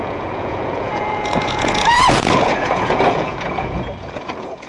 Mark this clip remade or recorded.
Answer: remade